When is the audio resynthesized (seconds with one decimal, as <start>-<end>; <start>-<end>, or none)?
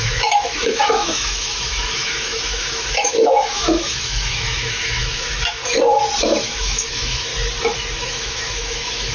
0.0-5.6; 6.2-7.3; 7.9-9.1